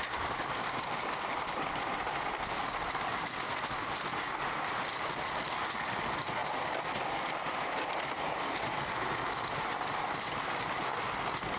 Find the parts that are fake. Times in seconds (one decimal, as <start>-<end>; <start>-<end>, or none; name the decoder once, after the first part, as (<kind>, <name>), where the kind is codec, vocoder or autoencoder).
none